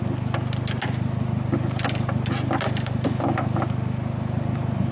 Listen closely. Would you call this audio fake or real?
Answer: real